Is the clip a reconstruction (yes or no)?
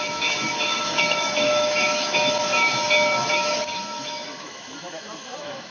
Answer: yes